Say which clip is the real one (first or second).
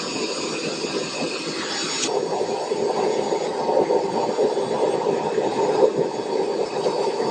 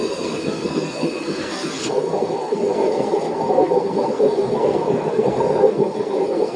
first